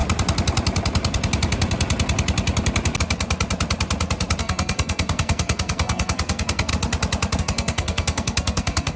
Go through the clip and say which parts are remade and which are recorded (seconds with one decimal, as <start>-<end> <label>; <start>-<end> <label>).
0.0-4.4 recorded; 4.4-6.7 remade; 6.7-7.4 recorded; 7.4-9.0 remade